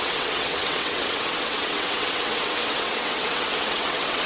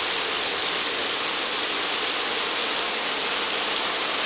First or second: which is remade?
first